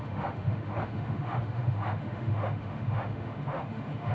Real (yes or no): no